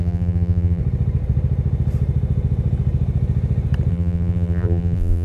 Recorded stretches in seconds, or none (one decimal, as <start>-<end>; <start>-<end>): 0.8-3.9